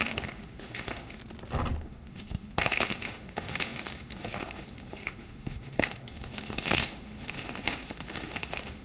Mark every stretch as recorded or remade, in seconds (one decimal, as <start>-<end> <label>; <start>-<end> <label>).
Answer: 0.0-1.2 remade; 1.2-1.8 recorded; 1.8-8.8 remade